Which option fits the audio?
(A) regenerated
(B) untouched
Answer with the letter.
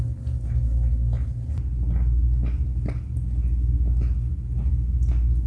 B